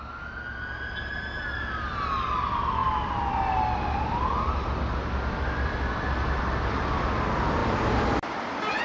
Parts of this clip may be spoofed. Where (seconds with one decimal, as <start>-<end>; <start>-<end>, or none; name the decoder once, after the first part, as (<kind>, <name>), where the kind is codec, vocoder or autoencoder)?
7.6-8.8 (vocoder, BigVGAN v2)

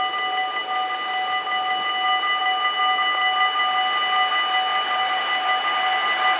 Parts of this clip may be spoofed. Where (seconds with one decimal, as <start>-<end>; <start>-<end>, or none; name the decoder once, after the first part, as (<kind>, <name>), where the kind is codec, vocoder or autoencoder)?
4.7-5.2 (vocoder, BigVGAN v2)

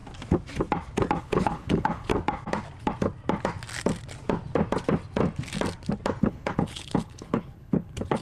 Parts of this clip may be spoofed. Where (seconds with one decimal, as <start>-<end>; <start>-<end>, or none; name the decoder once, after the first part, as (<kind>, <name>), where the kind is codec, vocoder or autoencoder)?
1.2-2.1 (codec, HILCodec); 6.2-8.2

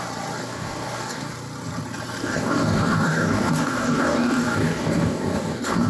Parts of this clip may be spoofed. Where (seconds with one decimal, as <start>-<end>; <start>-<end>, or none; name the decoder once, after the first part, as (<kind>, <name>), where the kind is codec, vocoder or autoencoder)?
0.4-1.3 (codec, DAC); 2.2-5.9

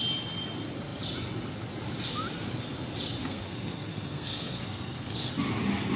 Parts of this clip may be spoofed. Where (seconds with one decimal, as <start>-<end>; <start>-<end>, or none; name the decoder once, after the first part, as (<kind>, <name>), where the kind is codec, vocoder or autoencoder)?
3.2-5.3 (codec, SNAC)

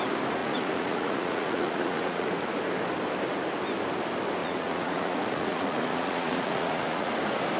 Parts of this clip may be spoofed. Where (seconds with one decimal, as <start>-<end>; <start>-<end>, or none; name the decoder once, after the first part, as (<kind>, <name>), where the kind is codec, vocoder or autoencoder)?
0.4-2.3 (vocoder, Vocos); 4.4-7.1